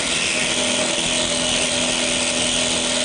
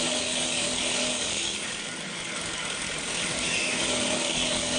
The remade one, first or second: second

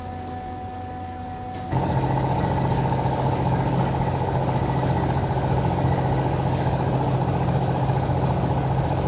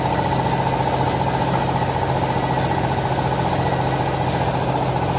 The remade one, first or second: first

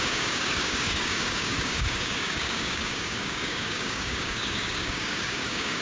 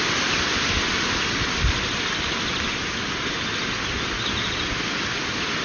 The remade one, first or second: first